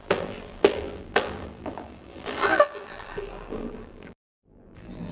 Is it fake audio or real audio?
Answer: fake